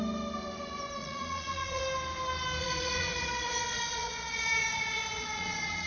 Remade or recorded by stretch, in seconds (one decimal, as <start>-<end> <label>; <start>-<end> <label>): 0.0-1.0 recorded; 1.0-1.8 remade; 1.8-2.6 recorded; 2.6-5.9 remade